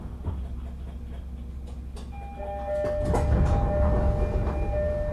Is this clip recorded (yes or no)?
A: yes